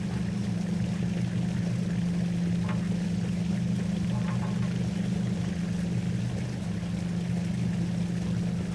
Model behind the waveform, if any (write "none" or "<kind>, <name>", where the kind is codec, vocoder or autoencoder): none